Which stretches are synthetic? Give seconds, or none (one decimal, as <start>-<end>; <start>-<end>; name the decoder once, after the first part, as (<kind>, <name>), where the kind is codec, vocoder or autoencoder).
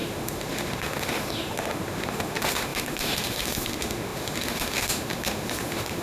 0.0-6.0 (autoencoder, DAC-VAE)